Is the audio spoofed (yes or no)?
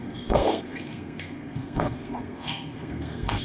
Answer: yes